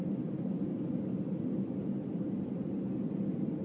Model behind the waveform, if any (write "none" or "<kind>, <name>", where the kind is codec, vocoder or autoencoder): none